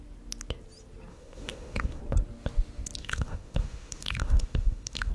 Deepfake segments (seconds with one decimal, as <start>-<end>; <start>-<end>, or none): 1.1-2.0; 3.0-5.1